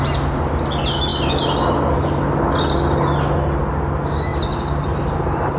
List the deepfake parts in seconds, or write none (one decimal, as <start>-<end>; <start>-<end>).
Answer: none